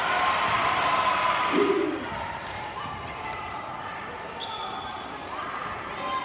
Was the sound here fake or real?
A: fake